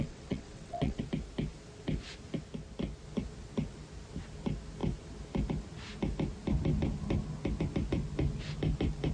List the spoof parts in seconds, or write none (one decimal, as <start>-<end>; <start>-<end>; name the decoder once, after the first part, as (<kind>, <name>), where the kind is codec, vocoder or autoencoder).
0.0-1.0 (vocoder, WaveNeXt)